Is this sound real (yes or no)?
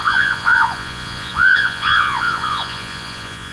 no